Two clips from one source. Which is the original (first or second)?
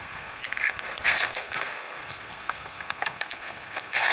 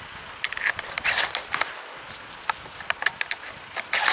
second